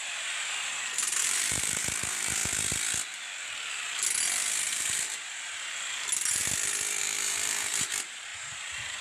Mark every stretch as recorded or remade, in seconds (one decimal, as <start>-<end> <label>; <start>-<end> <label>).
0.0-2.4 remade; 2.4-4.6 recorded; 4.6-6.4 remade; 6.4-7.0 recorded; 7.0-9.0 remade